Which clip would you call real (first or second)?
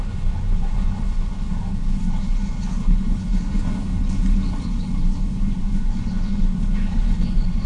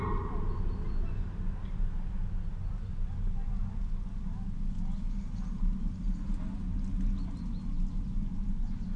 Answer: second